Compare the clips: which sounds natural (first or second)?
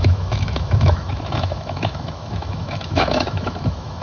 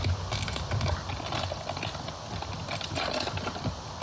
second